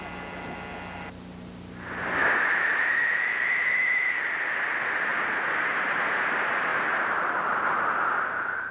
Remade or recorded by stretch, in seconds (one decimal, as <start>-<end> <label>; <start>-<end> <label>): 0.0-2.2 recorded; 2.2-4.2 remade; 4.2-8.7 recorded

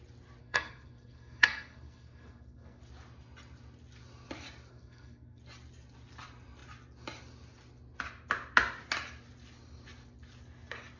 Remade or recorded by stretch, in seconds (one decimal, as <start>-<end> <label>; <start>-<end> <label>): 0.0-0.4 recorded; 0.4-2.8 remade; 2.8-4.7 recorded; 4.7-5.4 remade; 5.4-11.0 recorded